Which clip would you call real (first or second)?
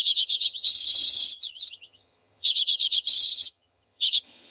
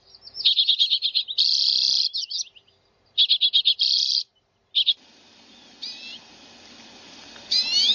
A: second